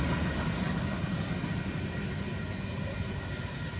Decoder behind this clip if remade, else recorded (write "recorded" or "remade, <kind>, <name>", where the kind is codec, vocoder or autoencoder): recorded